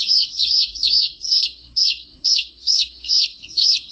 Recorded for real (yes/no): no